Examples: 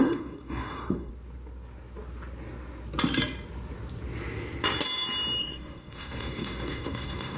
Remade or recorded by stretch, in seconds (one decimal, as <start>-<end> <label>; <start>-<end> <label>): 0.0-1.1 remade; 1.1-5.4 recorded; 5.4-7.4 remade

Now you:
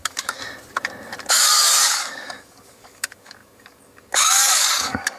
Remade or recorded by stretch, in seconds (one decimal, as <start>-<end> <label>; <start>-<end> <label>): 0.0-0.4 remade; 0.4-1.3 recorded; 1.3-5.2 remade

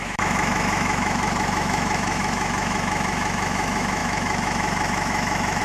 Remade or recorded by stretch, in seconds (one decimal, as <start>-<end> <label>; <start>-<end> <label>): 0.0-5.6 remade

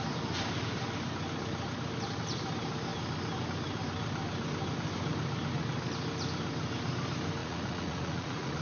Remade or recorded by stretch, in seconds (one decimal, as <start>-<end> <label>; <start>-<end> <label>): 0.0-7.4 recorded; 7.4-8.6 remade